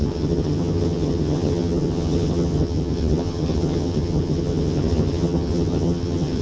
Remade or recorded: remade